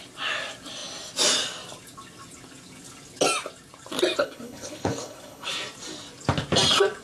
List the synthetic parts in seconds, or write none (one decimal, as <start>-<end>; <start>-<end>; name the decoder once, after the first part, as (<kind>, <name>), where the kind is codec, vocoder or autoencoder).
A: 4.2-5.5 (codec, HILCodec)